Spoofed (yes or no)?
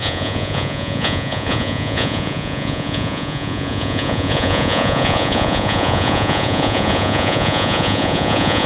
yes